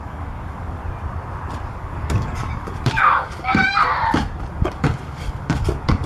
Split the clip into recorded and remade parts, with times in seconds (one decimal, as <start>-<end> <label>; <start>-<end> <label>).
0.0-0.8 remade; 0.8-1.7 recorded; 1.7-3.6 remade; 3.6-4.5 recorded; 4.5-6.1 remade